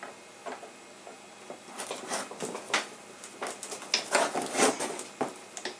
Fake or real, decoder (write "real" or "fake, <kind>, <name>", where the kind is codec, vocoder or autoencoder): real